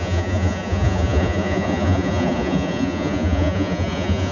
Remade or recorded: remade